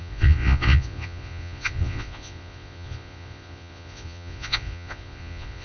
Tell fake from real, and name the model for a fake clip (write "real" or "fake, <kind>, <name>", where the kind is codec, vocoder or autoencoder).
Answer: fake, vocoder, Vocos